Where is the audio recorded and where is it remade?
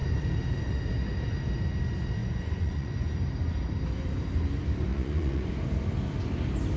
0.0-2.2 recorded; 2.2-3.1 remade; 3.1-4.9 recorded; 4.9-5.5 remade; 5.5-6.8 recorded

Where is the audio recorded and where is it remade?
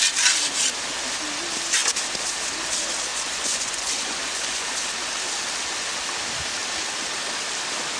0.0-3.1 recorded; 3.1-4.7 remade; 4.7-8.0 recorded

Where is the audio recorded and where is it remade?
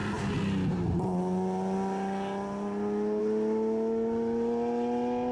0.0-5.3 recorded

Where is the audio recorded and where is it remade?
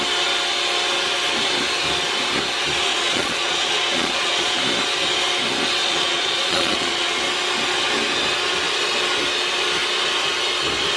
0.0-2.9 recorded; 2.9-4.6 remade; 4.6-5.8 recorded; 5.8-7.2 remade; 7.2-11.0 recorded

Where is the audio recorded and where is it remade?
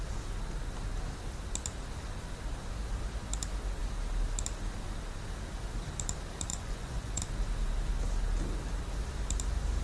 0.0-6.5 recorded; 6.5-7.2 remade; 7.2-9.8 recorded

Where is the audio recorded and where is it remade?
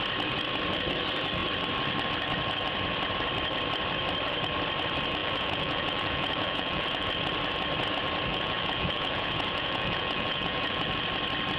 0.0-5.2 recorded; 5.2-7.1 remade; 7.1-8.3 recorded; 8.3-11.0 remade; 11.0-11.6 recorded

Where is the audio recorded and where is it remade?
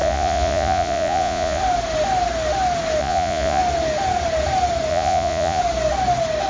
0.0-1.6 remade; 1.6-3.0 recorded; 3.0-3.6 remade; 3.6-4.9 recorded; 4.9-5.6 remade; 5.6-6.5 recorded